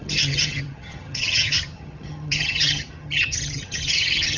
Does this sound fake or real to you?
fake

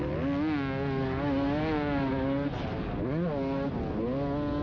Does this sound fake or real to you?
real